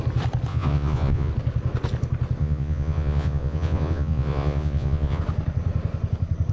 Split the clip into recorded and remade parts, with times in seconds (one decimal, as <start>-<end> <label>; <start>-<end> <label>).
0.0-0.5 recorded; 0.5-1.3 remade; 1.3-2.4 recorded; 2.4-5.2 remade; 5.2-6.5 recorded